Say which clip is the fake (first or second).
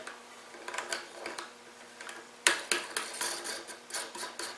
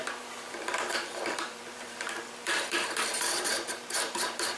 second